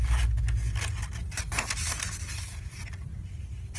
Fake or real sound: real